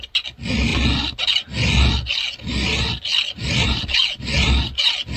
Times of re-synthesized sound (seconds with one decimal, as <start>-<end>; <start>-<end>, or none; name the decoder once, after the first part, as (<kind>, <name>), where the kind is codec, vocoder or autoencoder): 0.7-1.4 (vocoder, BigVGAN v2); 3.1-3.8